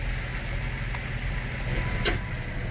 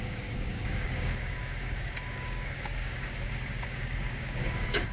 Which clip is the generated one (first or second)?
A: second